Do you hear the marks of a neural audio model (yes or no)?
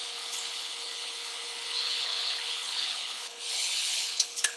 yes